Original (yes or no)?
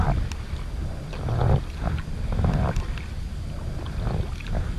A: yes